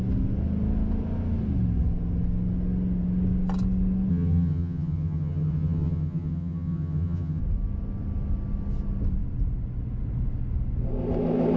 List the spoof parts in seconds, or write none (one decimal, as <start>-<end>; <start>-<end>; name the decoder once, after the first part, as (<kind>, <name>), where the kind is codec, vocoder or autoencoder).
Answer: 4.1-7.4 (vocoder, HiFi-GAN)